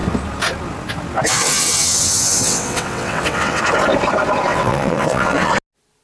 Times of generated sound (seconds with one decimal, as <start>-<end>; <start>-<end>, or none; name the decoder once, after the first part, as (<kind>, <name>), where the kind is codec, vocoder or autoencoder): 1.3-3.6 (vocoder, WaveNeXt); 4.5-5.5